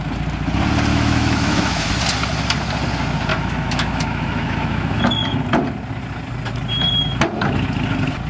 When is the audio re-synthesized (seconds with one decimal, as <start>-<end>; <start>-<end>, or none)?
0.9-1.9; 3.3-5.0